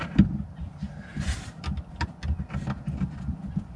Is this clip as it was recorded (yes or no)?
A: yes